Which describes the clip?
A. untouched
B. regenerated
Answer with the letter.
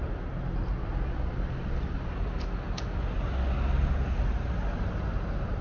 A